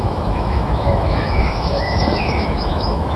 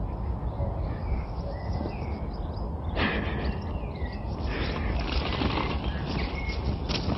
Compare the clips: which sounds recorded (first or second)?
second